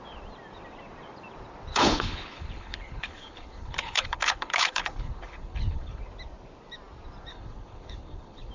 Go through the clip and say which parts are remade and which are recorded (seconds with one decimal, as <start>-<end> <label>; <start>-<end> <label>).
0.0-1.7 recorded; 1.7-6.0 remade; 6.0-7.3 recorded; 7.3-8.5 remade